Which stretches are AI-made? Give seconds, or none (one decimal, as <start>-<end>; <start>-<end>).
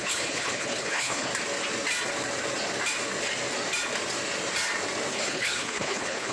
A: 0.0-1.3; 5.1-6.3